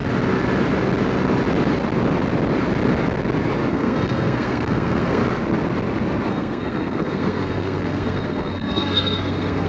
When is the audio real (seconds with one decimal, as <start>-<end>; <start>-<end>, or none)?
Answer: 0.0-3.7; 5.2-6.3